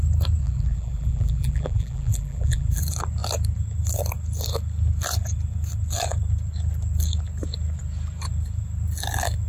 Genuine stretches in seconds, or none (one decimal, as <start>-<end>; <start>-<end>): 0.0-0.4; 2.8-9.5